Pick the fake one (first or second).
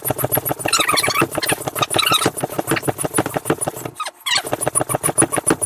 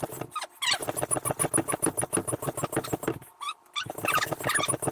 first